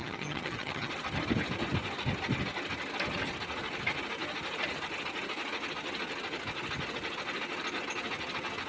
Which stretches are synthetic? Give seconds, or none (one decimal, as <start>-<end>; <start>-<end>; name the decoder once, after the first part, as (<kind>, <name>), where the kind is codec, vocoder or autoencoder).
0.0-0.9 (vocoder, HiFi-GAN)